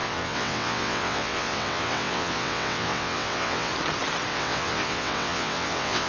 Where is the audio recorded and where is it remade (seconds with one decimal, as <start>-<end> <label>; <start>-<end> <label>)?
0.0-3.7 remade; 3.7-4.3 recorded; 4.3-6.1 remade